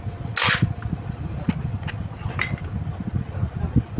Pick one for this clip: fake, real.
real